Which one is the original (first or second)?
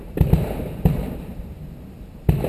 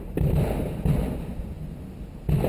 second